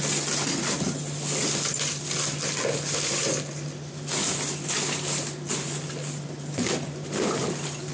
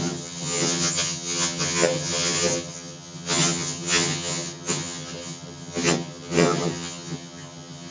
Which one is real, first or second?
first